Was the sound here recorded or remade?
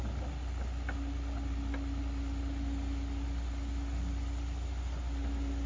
recorded